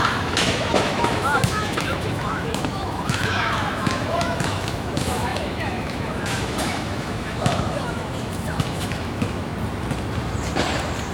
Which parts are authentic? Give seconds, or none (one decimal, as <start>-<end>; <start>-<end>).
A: 9.5-11.1